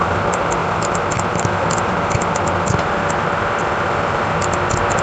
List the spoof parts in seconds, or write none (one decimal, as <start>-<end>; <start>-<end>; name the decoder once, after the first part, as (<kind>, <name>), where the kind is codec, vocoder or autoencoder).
none